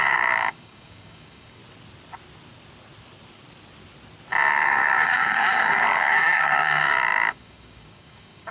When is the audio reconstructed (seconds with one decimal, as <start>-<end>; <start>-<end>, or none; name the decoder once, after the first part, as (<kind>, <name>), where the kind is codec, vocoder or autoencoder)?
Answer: 0.0-1.6 (codec, DAC); 4.5-8.5